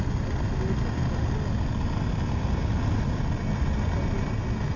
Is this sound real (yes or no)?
yes